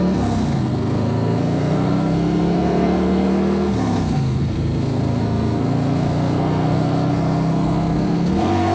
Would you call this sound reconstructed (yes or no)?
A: yes